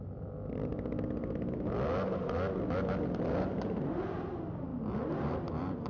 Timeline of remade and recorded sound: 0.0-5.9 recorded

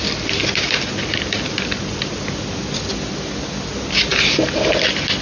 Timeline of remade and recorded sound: 0.0-5.2 recorded